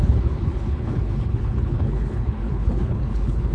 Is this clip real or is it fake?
fake